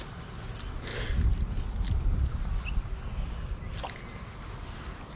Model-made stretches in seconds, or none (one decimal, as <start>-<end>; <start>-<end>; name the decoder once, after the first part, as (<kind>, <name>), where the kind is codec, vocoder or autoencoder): none